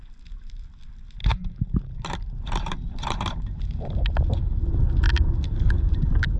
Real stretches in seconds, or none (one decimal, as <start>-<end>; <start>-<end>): 0.0-1.2; 3.9-6.4